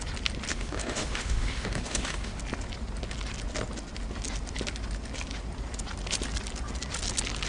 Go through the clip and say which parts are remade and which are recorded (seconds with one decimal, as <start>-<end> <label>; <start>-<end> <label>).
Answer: 0.0-0.5 recorded; 0.5-2.4 remade; 2.4-7.5 recorded